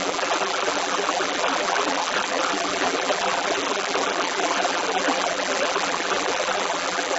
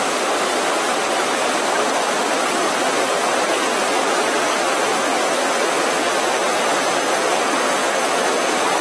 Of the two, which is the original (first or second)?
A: second